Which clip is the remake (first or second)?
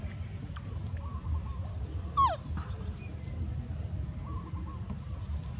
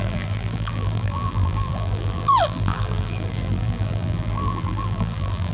second